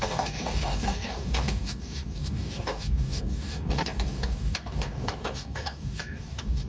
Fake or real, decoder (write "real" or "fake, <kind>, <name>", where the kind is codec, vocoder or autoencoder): fake, codec, DAC